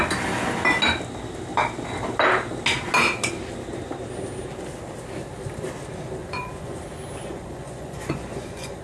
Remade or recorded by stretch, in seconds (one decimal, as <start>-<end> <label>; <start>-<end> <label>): 0.0-6.2 recorded; 6.2-6.8 remade; 6.8-7.2 recorded; 7.2-8.8 remade